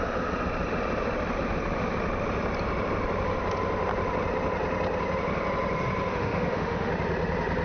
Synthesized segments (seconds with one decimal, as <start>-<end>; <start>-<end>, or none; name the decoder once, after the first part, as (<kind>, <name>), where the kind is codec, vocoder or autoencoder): 6.1-6.9 (autoencoder, DAC-VAE)